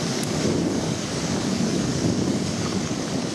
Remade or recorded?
remade